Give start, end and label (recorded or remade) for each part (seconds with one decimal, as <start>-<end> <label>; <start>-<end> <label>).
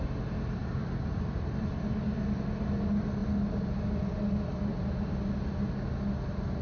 0.0-0.6 recorded; 0.6-1.7 remade; 1.7-6.6 recorded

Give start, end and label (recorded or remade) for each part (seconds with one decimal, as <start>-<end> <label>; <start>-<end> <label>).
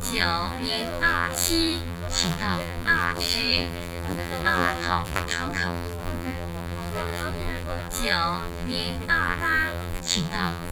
0.0-10.7 remade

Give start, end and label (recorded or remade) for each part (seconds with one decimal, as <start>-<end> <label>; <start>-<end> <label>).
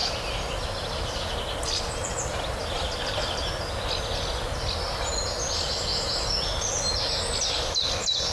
0.0-8.3 recorded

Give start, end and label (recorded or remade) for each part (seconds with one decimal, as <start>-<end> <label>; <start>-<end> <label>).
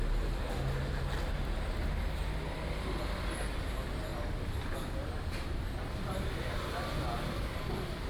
0.0-4.1 recorded; 4.1-6.7 remade; 6.7-8.1 recorded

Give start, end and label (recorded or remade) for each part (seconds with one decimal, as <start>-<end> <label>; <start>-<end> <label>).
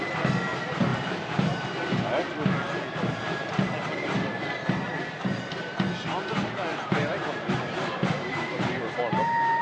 0.0-6.7 recorded; 6.7-8.9 remade; 8.9-9.6 recorded